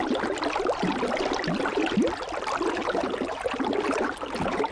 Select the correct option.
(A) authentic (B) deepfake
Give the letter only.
A